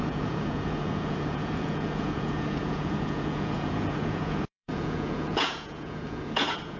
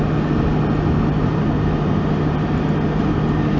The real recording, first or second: second